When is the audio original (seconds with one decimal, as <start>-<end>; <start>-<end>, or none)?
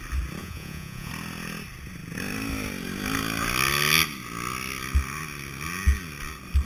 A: 0.0-0.4; 1.1-6.7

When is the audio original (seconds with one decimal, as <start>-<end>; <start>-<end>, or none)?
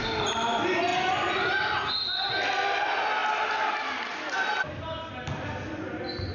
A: 0.0-6.3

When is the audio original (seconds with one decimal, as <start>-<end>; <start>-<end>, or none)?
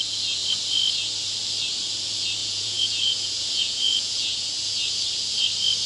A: 0.0-2.4; 4.5-5.9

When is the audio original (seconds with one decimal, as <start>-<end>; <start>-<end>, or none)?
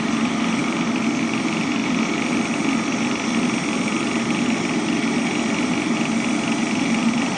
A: 0.0-7.4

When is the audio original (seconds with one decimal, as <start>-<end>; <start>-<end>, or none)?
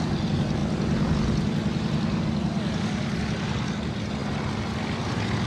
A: 0.0-5.5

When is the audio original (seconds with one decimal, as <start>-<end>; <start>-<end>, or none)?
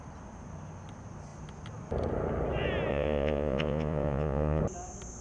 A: 0.0-2.9; 4.6-5.2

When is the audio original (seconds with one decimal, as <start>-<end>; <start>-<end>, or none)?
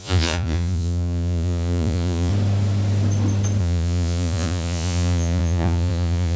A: 2.3-3.6